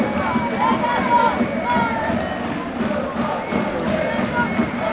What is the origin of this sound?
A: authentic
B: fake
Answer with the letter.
A